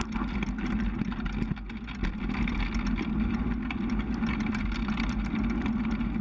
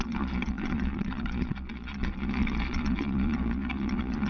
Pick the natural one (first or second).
first